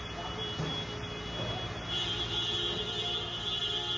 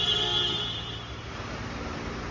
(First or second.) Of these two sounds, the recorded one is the first